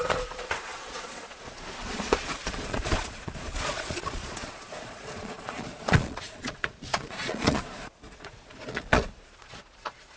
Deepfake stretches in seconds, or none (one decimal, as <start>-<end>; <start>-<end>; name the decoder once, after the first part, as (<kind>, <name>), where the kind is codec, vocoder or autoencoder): 0.0-10.2 (vocoder, Vocos)